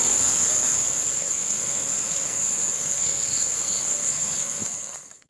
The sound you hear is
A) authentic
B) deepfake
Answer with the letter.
B